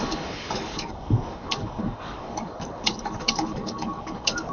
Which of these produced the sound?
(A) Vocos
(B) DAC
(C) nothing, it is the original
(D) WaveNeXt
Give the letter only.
B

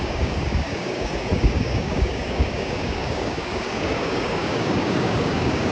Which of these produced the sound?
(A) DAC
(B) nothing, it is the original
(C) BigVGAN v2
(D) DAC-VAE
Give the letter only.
A